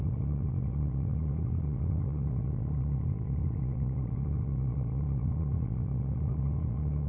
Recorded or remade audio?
remade